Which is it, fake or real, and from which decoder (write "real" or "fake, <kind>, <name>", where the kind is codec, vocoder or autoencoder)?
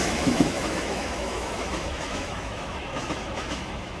fake, autoencoder, DAC-VAE